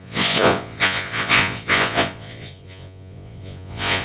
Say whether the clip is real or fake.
fake